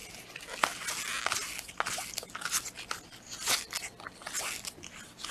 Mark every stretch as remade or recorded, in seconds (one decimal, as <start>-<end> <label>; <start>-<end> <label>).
0.0-5.3 recorded